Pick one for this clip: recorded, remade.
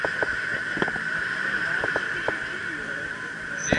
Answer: recorded